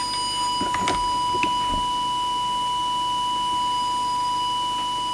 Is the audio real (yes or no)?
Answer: yes